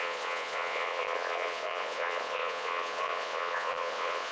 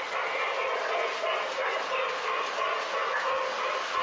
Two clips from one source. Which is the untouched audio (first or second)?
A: second